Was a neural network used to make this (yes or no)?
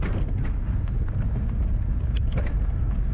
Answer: no